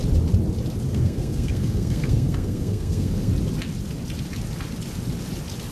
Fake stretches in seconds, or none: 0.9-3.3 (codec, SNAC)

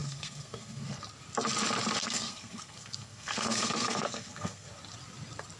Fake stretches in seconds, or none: 0.0-1.0 (codec, SNAC); 2.0-4.7

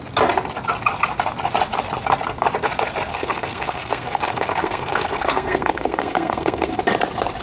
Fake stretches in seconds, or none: 3.1-6.8 (codec, SNAC)